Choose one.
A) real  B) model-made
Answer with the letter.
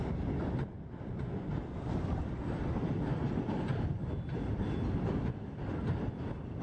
A